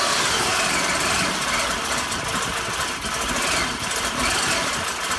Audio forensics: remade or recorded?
recorded